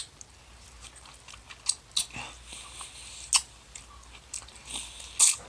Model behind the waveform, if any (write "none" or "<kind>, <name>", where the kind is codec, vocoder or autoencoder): none